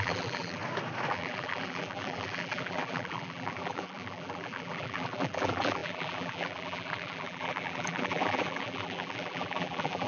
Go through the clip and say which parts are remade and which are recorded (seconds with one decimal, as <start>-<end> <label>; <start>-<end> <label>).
0.0-0.6 remade; 0.6-1.1 recorded; 1.1-10.1 remade